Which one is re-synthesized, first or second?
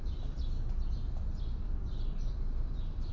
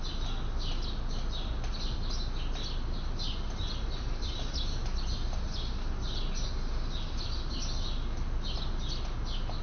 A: first